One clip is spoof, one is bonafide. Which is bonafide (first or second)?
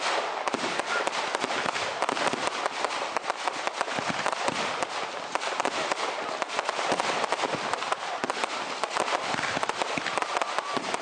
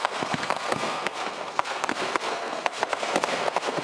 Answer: first